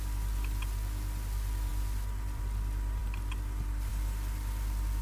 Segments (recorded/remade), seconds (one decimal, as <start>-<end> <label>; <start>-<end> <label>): 0.0-1.7 recorded; 1.7-2.4 remade; 2.4-3.0 recorded; 3.0-3.9 remade; 3.9-5.0 recorded